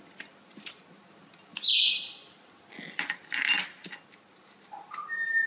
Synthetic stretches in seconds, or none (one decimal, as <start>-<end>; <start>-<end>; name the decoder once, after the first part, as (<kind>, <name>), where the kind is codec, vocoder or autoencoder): none